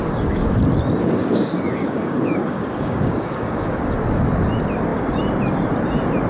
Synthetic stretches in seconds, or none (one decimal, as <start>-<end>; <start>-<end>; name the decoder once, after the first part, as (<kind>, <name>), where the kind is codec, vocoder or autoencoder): 0.0-0.6 (codec, DAC); 1.0-3.8